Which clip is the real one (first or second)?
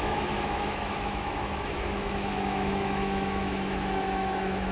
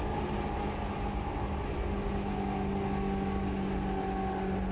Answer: second